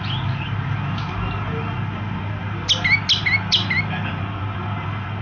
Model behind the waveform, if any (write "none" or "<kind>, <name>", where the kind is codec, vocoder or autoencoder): none